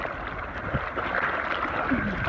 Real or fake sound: real